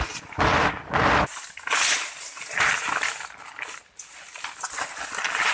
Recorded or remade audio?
recorded